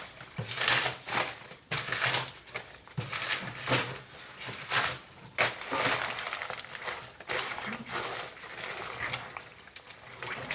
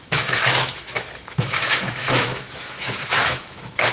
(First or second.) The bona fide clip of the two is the first